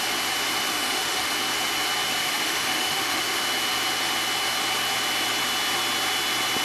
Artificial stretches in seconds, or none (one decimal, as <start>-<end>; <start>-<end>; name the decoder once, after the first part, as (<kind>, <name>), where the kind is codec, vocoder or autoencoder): 0.7-1.3 (autoencoder, DAC-VAE); 2.2-3.4